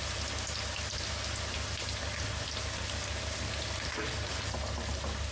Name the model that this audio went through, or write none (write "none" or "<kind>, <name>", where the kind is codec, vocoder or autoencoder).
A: none